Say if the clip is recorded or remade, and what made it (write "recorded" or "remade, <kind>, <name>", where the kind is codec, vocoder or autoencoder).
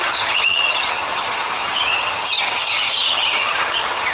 remade, vocoder, HiFi-GAN